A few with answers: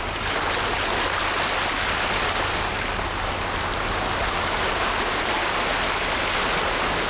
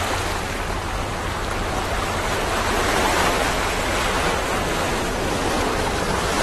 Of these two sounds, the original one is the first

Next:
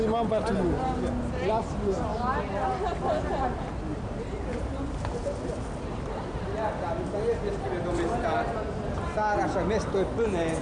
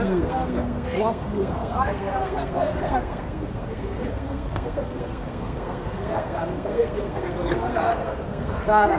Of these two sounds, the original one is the first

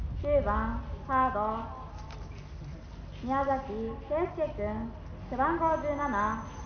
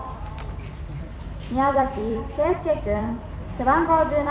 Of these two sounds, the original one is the first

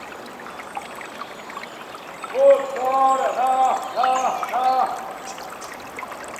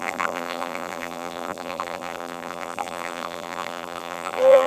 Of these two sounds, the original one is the first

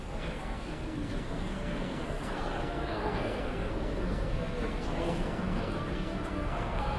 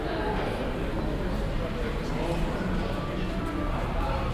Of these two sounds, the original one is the second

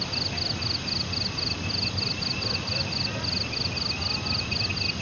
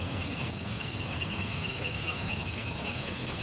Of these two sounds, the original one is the first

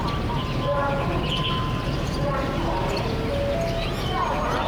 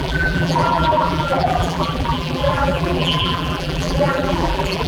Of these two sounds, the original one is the first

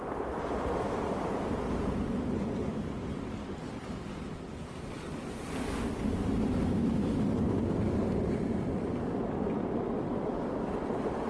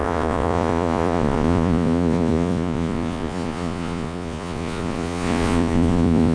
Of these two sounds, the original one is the first